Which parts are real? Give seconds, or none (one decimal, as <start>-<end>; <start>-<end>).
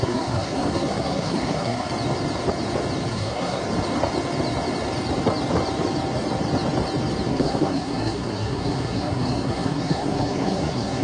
1.9-3.1; 3.6-7.3